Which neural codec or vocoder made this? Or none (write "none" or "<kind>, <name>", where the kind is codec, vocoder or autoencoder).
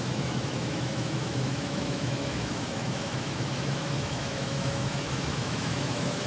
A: autoencoder, DAC-VAE